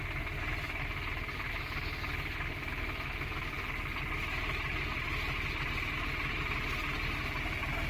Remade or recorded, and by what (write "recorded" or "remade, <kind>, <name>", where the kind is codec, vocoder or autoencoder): recorded